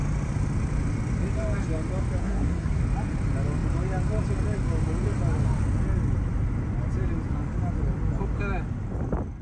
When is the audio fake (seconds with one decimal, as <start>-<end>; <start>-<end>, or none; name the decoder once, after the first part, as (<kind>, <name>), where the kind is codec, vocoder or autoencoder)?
2.2-2.8 (codec, SNAC)